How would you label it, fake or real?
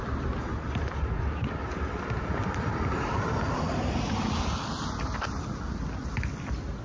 real